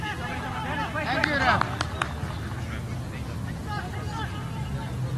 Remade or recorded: recorded